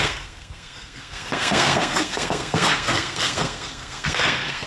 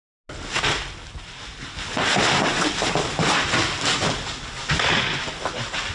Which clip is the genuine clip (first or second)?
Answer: second